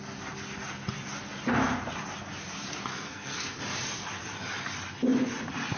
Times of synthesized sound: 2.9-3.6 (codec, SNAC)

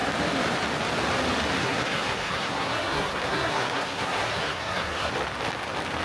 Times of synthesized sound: 1.6-5.1 (codec, SNAC)

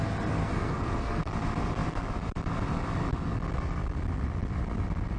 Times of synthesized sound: 0.4-1.3 (codec, SNAC)

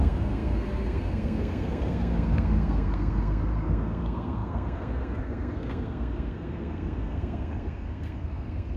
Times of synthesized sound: 0.0-8.8 (codec, SNAC)

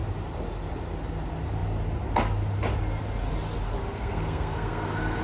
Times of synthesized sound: 3.8-5.2 (codec, SNAC)